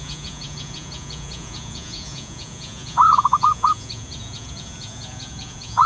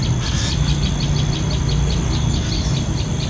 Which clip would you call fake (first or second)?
first